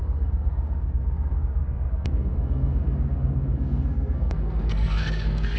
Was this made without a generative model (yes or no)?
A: no